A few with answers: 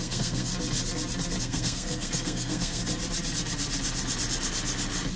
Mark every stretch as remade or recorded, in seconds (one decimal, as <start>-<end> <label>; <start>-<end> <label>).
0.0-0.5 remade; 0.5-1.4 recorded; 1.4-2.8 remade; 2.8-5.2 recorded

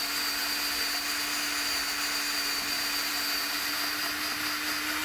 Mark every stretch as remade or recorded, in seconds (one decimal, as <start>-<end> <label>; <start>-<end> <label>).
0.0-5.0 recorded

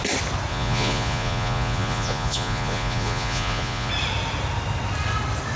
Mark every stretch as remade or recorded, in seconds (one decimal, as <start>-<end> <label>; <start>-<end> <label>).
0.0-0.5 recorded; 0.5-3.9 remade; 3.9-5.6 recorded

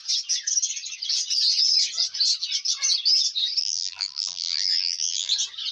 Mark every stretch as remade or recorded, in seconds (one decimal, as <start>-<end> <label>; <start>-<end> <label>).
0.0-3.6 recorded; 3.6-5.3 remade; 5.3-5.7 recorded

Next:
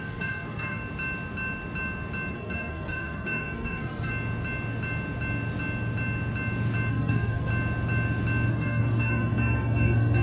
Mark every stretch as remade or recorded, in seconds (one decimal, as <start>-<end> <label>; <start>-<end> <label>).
0.0-0.8 remade; 0.8-2.3 recorded; 2.3-4.1 remade; 4.1-6.9 recorded; 6.9-7.5 remade; 7.5-8.5 recorded; 8.5-10.2 remade

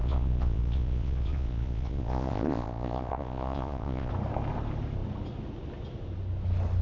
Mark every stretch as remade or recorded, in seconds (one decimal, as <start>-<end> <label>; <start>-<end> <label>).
0.0-4.1 remade; 4.1-6.8 recorded

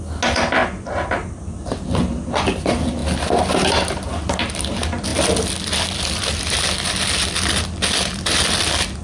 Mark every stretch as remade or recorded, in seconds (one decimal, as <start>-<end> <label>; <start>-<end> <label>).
0.0-9.0 recorded